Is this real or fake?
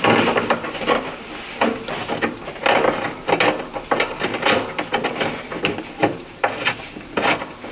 real